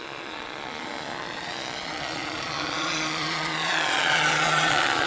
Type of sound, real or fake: fake